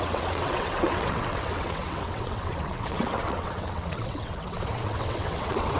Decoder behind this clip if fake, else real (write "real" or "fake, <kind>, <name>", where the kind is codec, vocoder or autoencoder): fake, vocoder, WaveNeXt